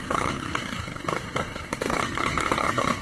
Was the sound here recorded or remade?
remade